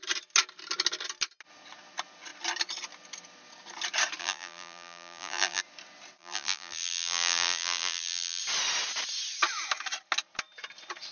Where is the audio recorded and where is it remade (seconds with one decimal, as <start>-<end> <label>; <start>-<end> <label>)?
0.0-4.2 recorded; 4.2-5.6 remade; 5.6-6.2 recorded; 6.2-8.4 remade; 8.4-11.1 recorded